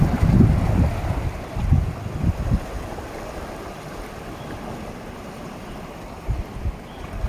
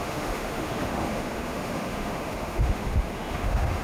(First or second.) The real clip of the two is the first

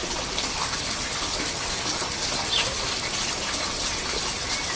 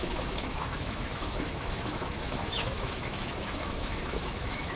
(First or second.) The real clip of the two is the first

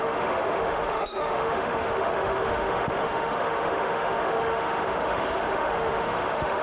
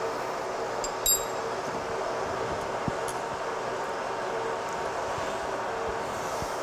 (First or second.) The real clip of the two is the second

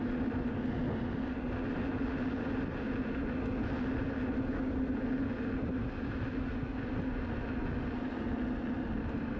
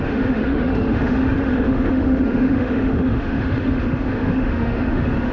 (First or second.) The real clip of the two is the first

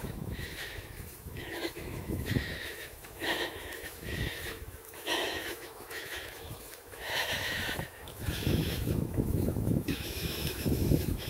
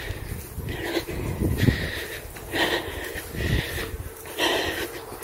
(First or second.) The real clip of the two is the second